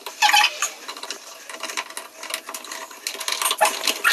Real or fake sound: real